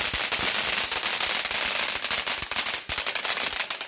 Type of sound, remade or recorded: recorded